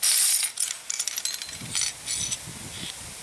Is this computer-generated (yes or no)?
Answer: no